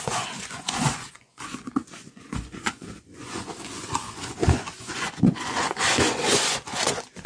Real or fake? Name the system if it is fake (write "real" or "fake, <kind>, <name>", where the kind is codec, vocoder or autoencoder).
fake, vocoder, Vocos